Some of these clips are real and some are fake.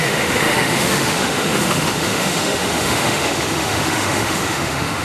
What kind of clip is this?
fake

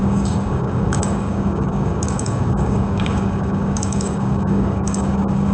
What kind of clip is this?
fake